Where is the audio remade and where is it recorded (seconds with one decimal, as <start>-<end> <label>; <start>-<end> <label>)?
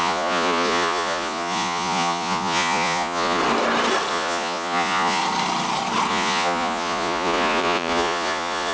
0.0-3.4 remade; 3.4-4.1 recorded; 4.1-5.2 remade; 5.2-6.1 recorded; 6.1-8.7 remade